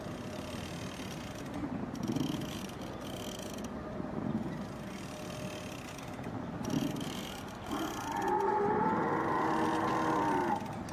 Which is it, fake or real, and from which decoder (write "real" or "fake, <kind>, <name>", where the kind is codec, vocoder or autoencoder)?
real